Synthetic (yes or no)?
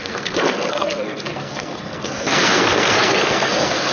yes